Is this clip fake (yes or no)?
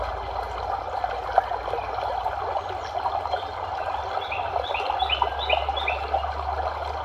no